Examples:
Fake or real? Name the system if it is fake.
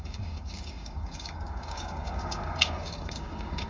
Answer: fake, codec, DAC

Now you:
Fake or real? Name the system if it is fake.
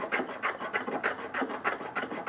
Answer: real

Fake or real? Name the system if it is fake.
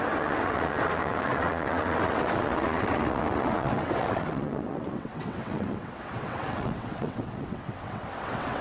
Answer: fake, vocoder, WaveNeXt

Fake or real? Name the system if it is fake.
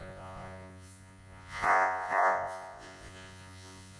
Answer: fake, vocoder, Vocos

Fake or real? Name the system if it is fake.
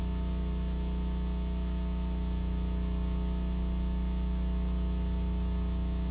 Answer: real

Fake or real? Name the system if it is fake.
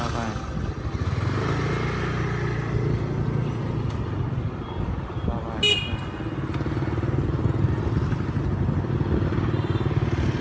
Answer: real